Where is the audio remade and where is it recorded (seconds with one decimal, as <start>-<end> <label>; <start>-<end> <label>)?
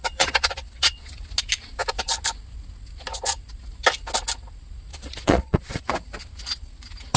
0.0-1.1 remade; 1.1-4.9 recorded; 4.9-5.9 remade; 5.9-7.2 recorded